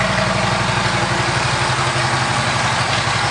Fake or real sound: real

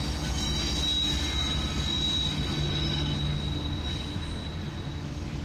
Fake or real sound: real